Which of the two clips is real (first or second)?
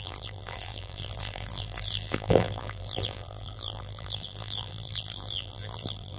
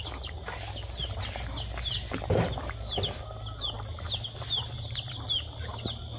second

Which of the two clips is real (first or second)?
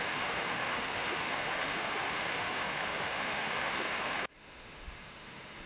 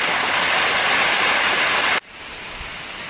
second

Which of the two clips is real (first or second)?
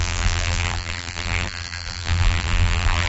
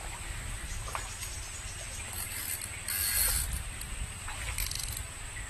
second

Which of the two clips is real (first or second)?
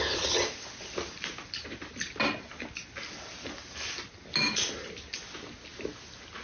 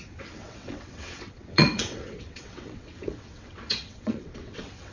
first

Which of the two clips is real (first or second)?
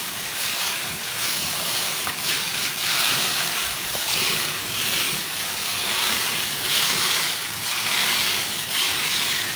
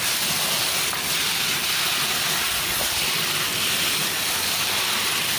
second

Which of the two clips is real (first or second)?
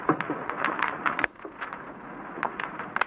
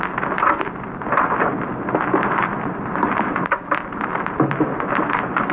second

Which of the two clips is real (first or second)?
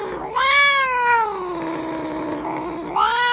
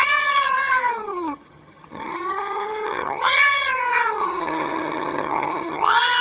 first